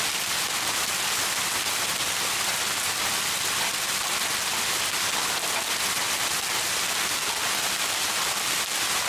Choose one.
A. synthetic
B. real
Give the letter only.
B